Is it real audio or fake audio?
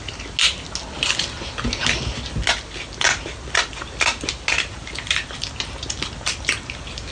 real